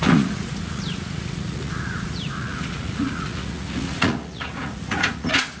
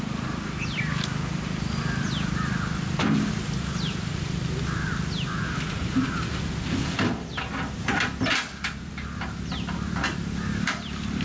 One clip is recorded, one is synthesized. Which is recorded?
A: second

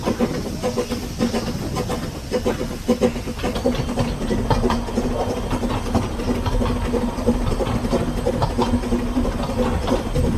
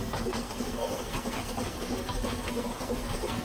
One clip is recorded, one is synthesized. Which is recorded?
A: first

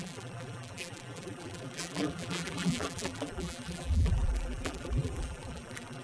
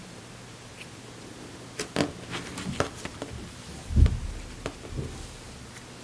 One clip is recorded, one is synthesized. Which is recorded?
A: second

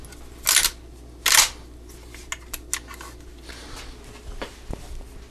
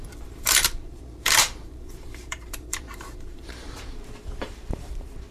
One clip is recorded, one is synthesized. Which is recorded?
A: first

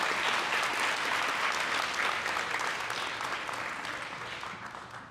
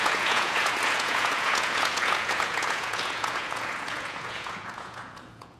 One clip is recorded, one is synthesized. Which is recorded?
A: first